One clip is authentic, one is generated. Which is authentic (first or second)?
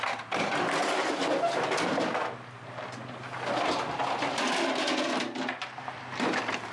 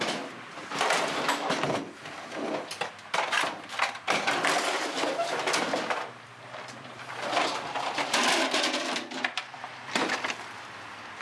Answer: first